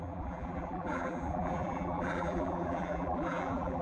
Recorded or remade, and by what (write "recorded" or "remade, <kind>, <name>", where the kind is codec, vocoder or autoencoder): remade, vocoder, BigVGAN v2